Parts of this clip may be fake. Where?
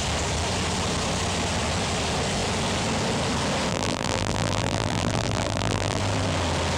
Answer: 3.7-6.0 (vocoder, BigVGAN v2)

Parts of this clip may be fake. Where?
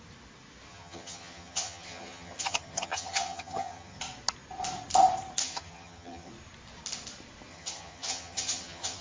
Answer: 0.7-4.0 (vocoder, HiFi-GAN); 5.4-6.3; 7.5-9.0